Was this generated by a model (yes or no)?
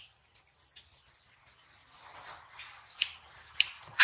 no